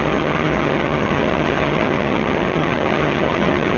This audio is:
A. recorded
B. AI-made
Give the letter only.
B